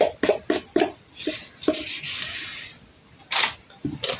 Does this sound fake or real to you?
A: real